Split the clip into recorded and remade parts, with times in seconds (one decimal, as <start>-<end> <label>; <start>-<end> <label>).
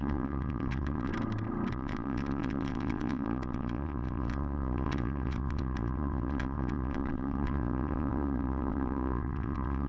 0.0-1.1 remade; 1.1-1.7 recorded; 1.7-9.9 remade